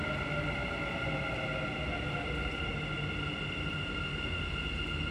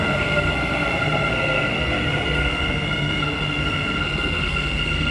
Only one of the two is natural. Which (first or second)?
first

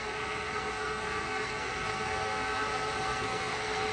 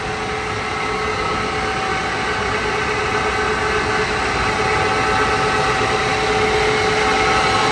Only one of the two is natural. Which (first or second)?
second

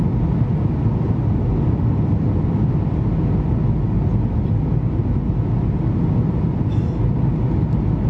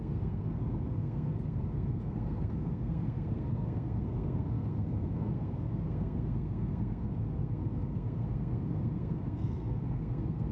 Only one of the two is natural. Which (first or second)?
first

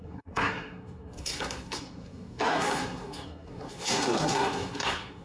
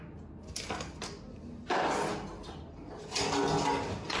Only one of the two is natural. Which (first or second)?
second